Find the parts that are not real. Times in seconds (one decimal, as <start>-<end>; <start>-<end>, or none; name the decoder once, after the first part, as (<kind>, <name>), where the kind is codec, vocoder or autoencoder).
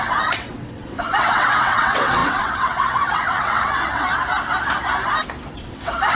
0.0-4.1 (vocoder, WaveNeXt); 5.6-6.1